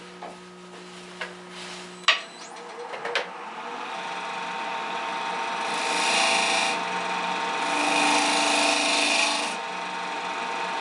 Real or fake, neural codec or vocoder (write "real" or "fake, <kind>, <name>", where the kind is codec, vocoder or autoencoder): real